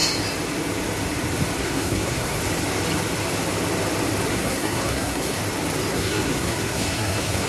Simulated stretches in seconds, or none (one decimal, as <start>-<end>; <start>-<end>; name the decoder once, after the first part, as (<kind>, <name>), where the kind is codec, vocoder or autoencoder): 1.6-2.4 (codec, SNAC); 4.3-5.4; 5.9-7.5